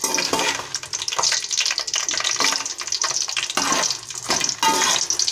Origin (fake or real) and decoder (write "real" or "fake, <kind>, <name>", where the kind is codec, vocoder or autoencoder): real